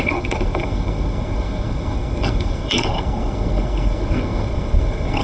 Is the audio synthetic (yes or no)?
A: yes